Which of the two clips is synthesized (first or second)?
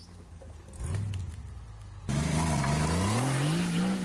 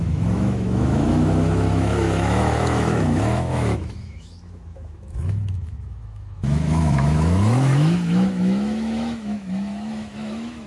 second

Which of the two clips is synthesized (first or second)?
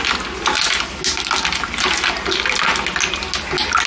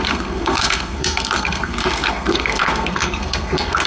second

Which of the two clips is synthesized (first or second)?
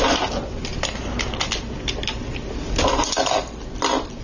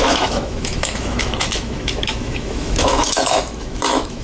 second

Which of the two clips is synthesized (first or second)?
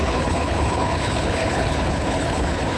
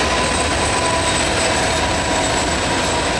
first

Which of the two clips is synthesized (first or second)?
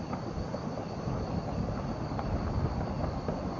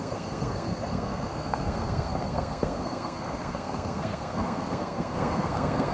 second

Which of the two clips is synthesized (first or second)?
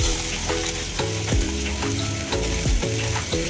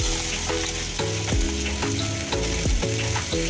first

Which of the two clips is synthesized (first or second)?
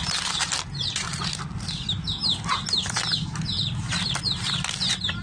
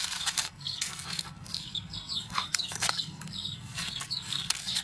second